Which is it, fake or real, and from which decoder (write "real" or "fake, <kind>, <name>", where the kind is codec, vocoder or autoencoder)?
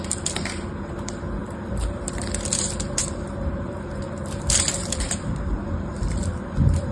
fake, vocoder, BigVGAN v2